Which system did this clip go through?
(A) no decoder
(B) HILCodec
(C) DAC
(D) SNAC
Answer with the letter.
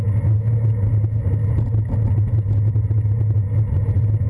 A